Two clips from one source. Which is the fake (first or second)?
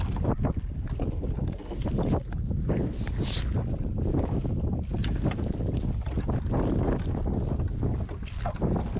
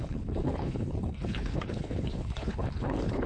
second